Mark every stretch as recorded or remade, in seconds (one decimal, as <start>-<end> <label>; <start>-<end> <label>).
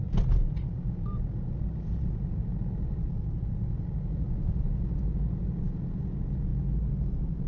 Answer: 0.0-7.5 recorded